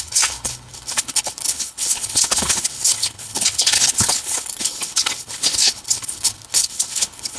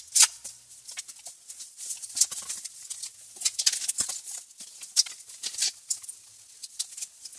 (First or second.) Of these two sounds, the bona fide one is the second